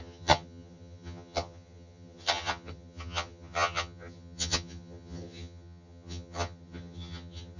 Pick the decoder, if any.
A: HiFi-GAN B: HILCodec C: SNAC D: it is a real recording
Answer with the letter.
A